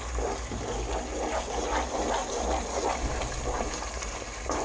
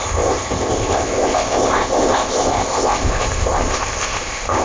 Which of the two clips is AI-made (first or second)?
second